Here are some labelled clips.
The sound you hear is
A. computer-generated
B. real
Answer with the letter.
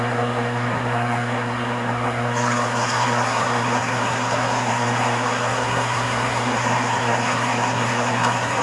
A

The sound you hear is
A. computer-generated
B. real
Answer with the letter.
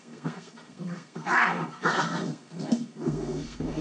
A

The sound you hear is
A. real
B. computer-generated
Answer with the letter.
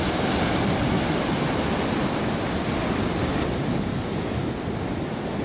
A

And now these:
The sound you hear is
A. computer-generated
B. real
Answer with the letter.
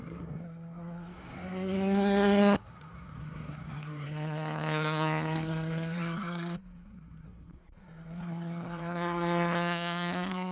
A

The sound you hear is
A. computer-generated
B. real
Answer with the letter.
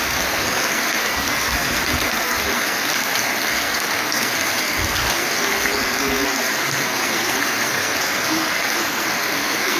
A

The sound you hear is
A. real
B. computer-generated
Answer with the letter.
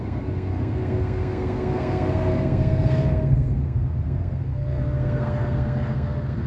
B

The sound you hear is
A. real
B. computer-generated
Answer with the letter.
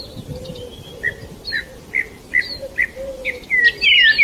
A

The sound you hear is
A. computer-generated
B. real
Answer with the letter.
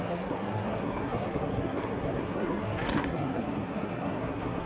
A